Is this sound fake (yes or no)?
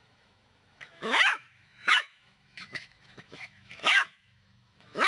yes